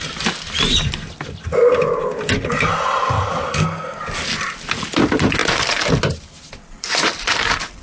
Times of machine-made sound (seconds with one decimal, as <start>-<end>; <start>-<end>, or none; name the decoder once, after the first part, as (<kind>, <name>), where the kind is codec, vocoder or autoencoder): 3.5-4.0 (codec, SNAC)